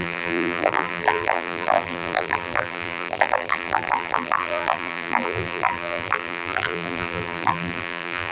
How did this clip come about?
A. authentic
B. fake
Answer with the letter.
B